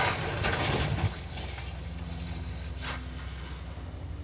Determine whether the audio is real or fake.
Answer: real